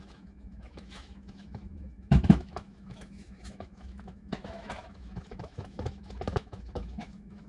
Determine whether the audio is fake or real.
fake